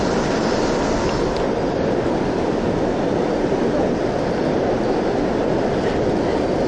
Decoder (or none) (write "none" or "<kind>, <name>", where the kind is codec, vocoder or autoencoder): none